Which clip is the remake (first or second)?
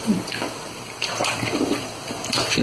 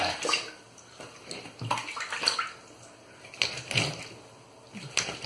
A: first